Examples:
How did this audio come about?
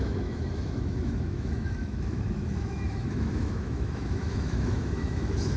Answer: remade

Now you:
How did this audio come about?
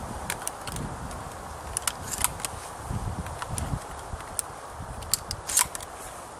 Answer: recorded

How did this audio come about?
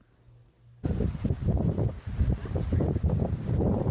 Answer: recorded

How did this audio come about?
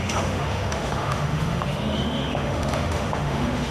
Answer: remade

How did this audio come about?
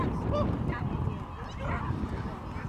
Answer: recorded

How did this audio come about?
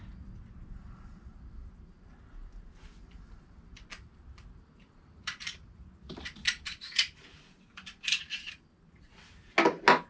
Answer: recorded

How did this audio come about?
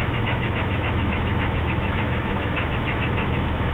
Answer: remade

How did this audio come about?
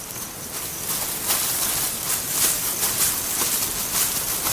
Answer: recorded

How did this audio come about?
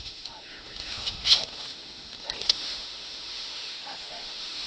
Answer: remade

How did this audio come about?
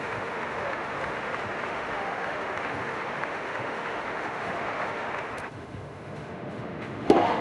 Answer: remade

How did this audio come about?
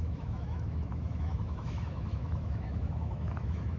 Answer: remade